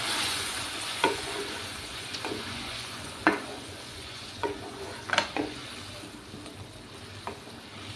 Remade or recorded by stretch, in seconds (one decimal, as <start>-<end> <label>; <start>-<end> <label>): 0.0-5.6 remade; 5.6-8.0 recorded